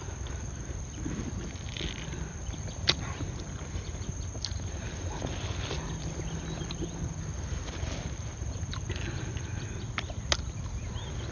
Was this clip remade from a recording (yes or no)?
no